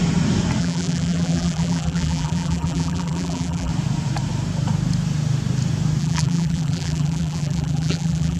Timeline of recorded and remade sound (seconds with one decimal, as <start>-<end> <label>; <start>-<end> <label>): 0.0-0.6 recorded; 0.6-3.7 remade; 3.7-6.0 recorded; 6.0-8.4 remade